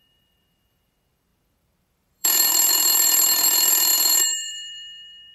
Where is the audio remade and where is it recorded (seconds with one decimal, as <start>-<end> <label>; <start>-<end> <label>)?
0.0-5.3 remade

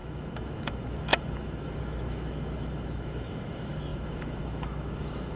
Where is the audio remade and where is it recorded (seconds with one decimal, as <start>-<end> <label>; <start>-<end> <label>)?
0.0-5.4 remade

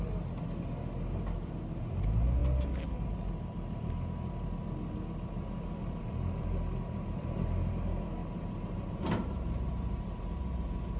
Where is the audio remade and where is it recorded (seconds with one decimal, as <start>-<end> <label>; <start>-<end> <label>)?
0.0-5.8 recorded; 5.8-7.7 remade; 7.7-8.2 recorded; 8.2-10.2 remade; 10.2-11.0 recorded